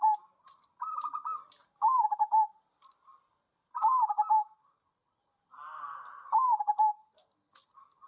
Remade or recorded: recorded